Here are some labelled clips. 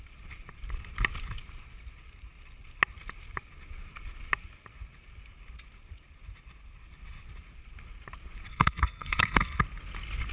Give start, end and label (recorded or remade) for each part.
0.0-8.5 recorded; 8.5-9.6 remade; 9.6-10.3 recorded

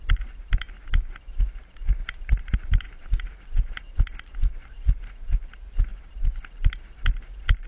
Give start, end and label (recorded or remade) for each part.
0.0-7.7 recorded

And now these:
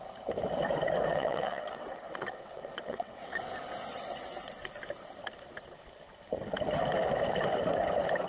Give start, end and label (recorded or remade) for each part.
0.0-1.1 recorded; 1.1-3.4 remade; 3.4-3.9 recorded; 3.9-4.5 remade; 4.5-8.3 recorded

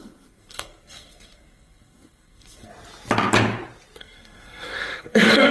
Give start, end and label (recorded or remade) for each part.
0.0-2.7 remade; 2.7-4.0 recorded; 4.0-5.5 remade